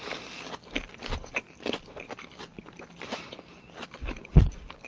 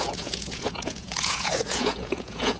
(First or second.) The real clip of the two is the first